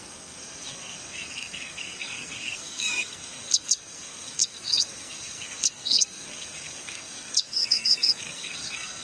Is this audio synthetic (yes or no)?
yes